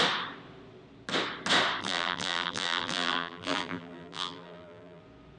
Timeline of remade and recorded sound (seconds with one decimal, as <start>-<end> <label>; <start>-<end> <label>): 0.0-1.8 recorded; 1.8-5.0 remade; 5.0-5.4 recorded